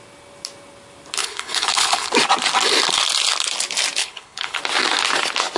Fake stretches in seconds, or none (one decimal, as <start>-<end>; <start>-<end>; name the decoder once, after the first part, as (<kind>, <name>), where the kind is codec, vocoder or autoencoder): 1.2-2.1 (codec, HILCodec); 4.0-4.6